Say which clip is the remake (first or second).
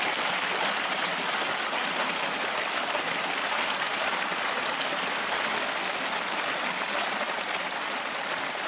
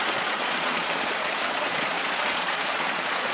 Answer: second